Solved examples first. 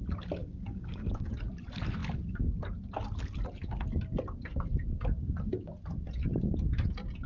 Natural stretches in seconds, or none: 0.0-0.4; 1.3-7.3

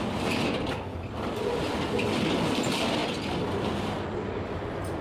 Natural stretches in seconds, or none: 0.0-5.0

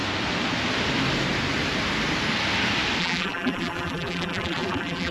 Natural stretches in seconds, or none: 0.0-3.0

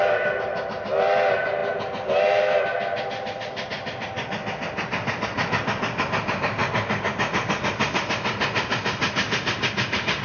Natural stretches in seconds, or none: 0.0-6.6; 7.1-10.2

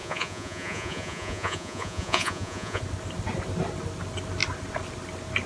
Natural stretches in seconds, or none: 2.8-5.5

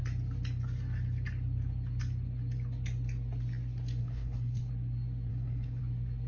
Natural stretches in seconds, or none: 0.0-4.0; 4.7-5.3; 5.8-6.3